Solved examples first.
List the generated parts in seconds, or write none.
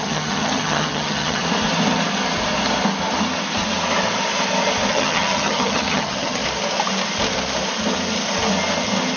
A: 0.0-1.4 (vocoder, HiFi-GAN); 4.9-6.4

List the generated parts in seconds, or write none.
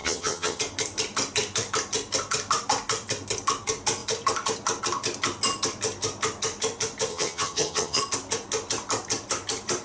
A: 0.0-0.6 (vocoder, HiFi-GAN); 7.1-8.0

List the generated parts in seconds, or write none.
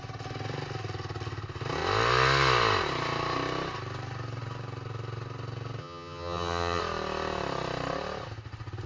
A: 5.8-6.8 (vocoder, HiFi-GAN)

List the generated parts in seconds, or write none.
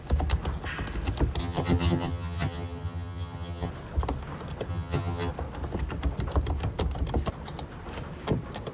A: 1.4-3.7 (vocoder, HiFi-GAN); 4.7-5.3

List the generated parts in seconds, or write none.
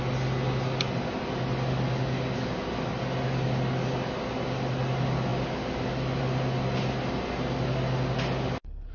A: none